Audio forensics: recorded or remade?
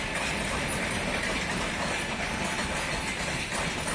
recorded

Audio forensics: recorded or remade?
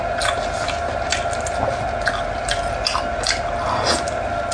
recorded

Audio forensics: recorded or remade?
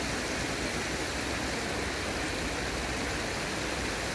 recorded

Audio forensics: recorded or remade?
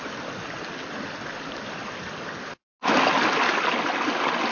recorded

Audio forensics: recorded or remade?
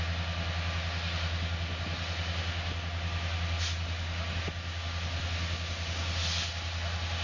recorded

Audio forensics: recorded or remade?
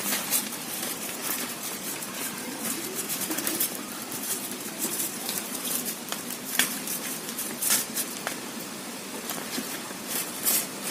remade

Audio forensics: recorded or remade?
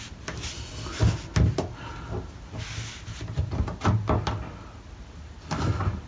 recorded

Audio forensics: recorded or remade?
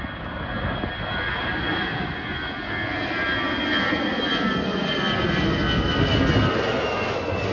recorded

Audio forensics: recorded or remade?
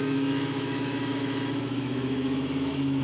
remade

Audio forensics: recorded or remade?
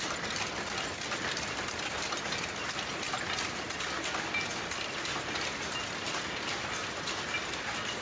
recorded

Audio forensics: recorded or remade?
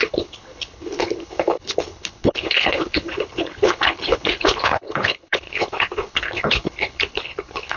remade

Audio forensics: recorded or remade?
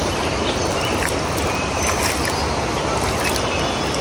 recorded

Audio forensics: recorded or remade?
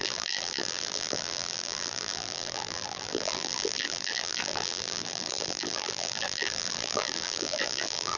remade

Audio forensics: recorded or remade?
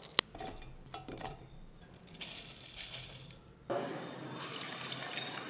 recorded